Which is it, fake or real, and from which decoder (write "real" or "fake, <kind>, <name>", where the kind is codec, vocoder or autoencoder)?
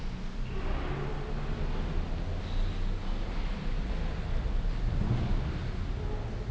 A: real